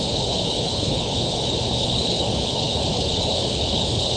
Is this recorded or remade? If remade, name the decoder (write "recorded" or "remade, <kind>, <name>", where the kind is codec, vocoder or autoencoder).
remade, codec, HILCodec